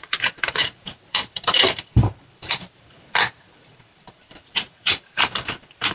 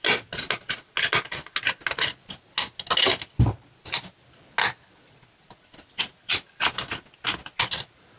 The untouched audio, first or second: second